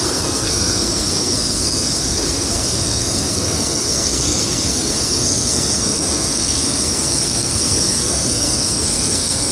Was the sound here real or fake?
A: fake